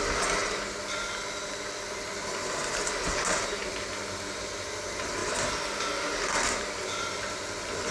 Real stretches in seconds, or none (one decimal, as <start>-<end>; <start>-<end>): 0.0-7.9